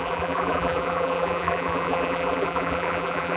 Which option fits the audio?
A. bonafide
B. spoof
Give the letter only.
B